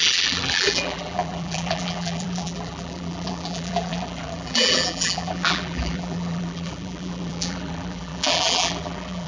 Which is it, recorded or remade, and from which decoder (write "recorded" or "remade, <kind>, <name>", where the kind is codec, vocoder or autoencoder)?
remade, vocoder, BigVGAN v2